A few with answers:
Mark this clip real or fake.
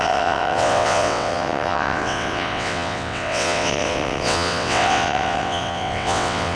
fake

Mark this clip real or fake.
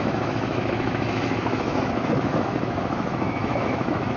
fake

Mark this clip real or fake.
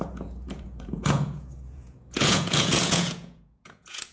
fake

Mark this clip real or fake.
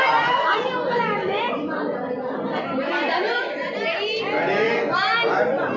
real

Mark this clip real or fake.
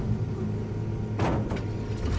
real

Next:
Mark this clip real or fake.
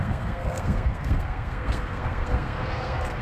fake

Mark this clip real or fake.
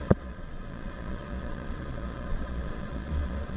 fake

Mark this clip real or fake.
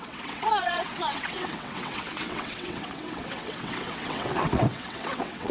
fake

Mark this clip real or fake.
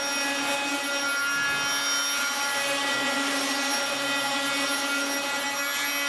real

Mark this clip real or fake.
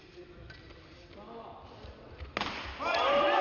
real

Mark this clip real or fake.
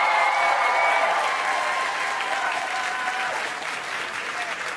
real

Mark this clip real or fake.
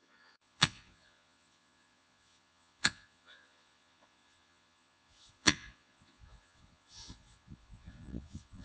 fake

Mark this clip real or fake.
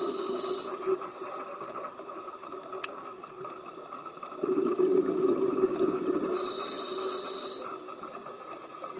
real